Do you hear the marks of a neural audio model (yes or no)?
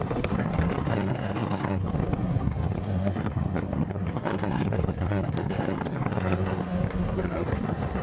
yes